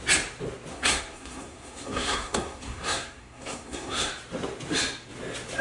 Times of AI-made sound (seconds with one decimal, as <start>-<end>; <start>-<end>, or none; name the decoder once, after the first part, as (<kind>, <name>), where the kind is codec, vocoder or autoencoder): 0.7-4.1 (codec, SNAC)